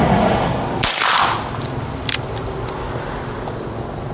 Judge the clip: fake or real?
real